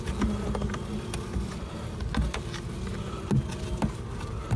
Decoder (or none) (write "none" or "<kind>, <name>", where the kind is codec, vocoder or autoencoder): none